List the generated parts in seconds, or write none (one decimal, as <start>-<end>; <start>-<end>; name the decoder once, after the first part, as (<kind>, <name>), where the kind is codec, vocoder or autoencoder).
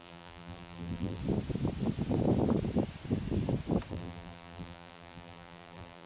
0.0-1.2 (vocoder, BigVGAN v2); 3.9-6.1